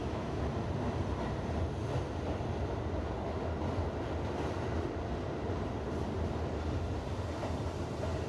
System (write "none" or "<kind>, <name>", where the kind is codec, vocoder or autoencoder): none